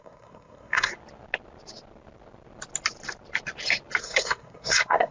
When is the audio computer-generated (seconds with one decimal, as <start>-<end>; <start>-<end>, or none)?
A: 0.0-0.9; 4.0-5.1